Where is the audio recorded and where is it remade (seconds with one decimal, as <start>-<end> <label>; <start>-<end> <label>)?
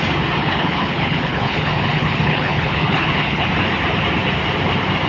0.0-0.4 recorded; 0.4-3.5 remade; 3.5-5.1 recorded